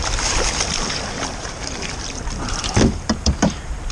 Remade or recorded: remade